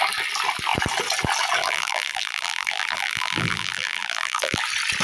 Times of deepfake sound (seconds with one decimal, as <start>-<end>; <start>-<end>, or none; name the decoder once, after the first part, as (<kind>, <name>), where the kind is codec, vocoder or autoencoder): 1.6-4.6 (vocoder, BigVGAN v2)